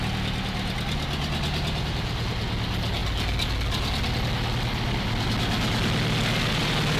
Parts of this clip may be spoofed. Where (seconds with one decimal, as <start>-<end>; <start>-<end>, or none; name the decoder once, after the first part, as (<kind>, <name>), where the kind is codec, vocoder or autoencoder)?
none

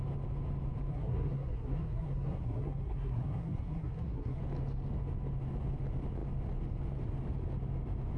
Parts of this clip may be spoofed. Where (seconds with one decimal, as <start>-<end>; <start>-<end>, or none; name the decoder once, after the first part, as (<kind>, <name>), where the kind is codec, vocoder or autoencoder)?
0.9-4.4 (codec, SNAC)

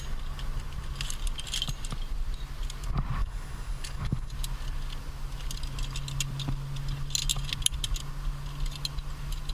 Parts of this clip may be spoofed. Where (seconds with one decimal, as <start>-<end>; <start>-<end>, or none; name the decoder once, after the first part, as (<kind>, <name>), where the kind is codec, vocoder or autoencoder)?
3.2-4.3 (codec, DAC)